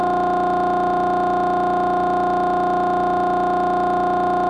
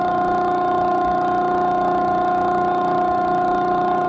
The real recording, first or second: first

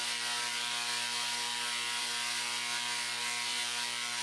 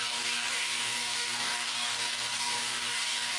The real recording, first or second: first